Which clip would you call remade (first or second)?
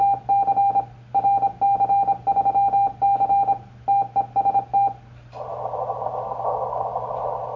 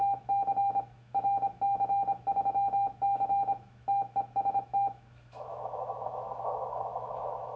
second